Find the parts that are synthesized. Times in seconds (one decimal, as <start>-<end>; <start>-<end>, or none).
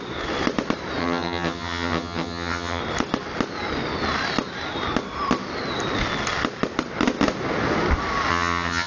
1.0-2.8; 8.3-8.9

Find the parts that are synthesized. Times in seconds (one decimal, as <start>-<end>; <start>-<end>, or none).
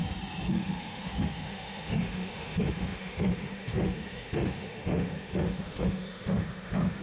0.5-7.0